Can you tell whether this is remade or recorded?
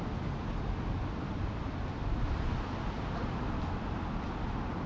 recorded